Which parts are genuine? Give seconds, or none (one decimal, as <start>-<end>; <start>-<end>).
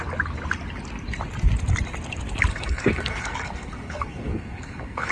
0.0-2.5